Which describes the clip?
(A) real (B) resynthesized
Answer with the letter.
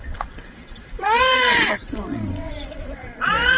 B